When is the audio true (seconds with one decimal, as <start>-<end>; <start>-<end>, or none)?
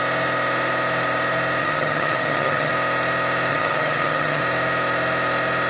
0.0-1.6; 2.7-3.5; 4.4-5.7